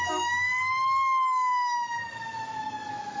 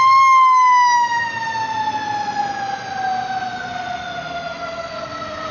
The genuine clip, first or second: second